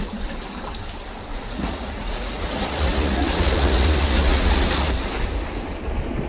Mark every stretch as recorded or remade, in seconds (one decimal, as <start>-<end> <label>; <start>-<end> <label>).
0.0-1.3 recorded; 1.3-5.1 remade; 5.1-6.3 recorded